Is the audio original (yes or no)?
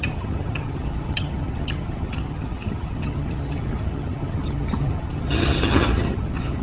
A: no